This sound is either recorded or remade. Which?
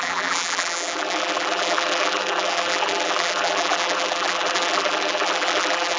remade